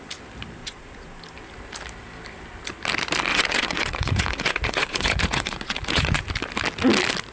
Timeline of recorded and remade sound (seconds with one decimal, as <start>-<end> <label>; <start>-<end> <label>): 0.0-0.6 recorded; 0.6-1.2 remade; 1.2-3.3 recorded; 3.3-6.3 remade; 6.3-7.3 recorded

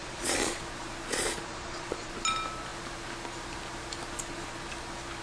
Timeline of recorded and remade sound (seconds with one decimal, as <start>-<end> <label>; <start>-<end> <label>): 0.0-0.6 remade; 0.6-1.1 recorded; 1.1-2.1 remade; 2.1-5.2 recorded

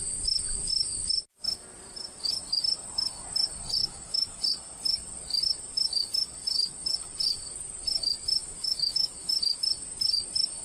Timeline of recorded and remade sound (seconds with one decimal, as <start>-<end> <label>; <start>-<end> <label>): 0.0-3.8 recorded; 3.8-4.4 remade; 4.4-8.4 recorded; 8.4-9.3 remade; 9.3-10.6 recorded

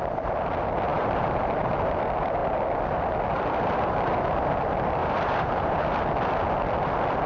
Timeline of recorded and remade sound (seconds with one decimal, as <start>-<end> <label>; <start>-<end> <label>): 0.0-0.9 recorded; 0.9-1.7 remade; 1.7-5.0 recorded; 5.0-6.0 remade; 6.0-7.3 recorded

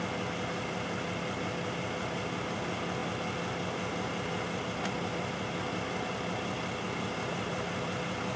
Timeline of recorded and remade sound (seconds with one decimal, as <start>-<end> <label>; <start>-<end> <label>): 0.0-8.4 recorded

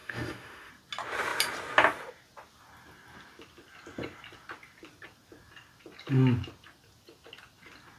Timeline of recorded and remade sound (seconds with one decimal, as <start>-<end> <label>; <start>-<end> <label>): 0.0-0.7 remade; 0.7-8.0 recorded